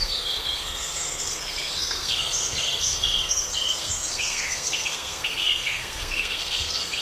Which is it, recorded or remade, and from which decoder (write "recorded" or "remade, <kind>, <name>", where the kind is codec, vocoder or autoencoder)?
remade, codec, SNAC